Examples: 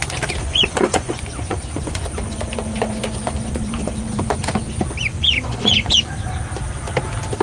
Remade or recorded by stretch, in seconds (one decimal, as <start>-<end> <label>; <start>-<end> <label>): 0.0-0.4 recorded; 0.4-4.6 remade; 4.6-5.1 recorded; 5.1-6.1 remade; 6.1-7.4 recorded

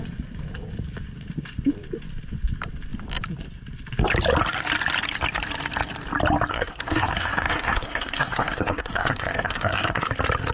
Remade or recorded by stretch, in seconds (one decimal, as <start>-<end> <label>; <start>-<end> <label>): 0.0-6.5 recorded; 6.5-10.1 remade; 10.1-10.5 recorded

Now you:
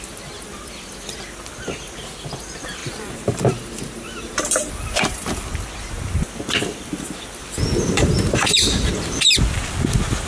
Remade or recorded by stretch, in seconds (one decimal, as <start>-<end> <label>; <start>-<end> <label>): 0.0-2.8 recorded; 2.8-4.7 remade; 4.7-7.4 recorded; 7.4-8.9 remade; 8.9-10.3 recorded